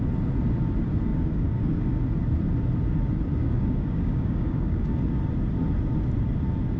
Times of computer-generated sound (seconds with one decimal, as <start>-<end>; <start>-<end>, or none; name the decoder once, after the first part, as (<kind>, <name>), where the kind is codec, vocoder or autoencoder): 1.1-1.8 (codec, DAC); 3.4-4.9